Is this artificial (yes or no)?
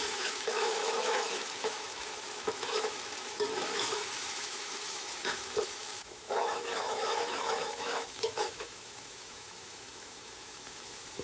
yes